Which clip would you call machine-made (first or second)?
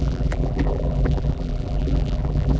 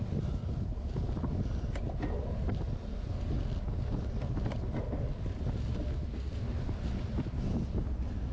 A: first